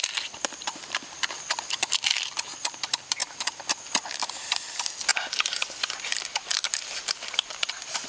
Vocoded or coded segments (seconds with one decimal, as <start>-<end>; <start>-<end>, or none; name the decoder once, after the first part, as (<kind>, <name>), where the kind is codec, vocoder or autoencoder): 0.0-3.2 (vocoder, BigVGAN v2); 4.2-5.1; 6.7-8.1